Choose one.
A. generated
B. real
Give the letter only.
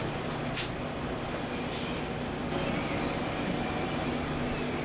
B